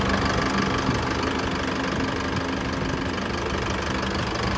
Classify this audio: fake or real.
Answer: real